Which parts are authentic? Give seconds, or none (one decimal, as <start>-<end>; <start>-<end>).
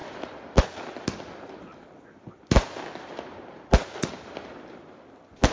0.0-5.5